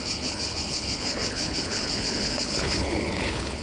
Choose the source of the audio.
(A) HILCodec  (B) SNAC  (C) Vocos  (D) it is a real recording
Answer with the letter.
A